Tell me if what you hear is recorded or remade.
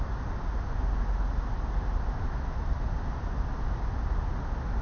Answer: recorded